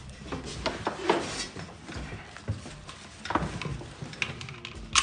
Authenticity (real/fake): real